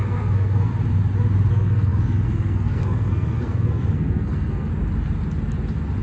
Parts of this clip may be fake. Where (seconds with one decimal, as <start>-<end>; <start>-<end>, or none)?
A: 0.0-0.7; 1.5-4.7